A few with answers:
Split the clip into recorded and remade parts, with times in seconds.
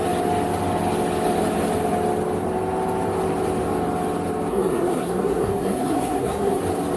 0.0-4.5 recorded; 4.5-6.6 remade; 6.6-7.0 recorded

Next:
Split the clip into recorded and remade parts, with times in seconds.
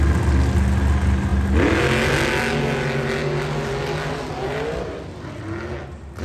0.0-6.2 recorded